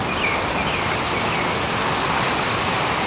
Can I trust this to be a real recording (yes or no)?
yes